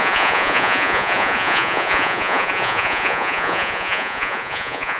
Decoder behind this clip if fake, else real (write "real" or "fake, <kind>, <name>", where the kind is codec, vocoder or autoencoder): fake, vocoder, Vocos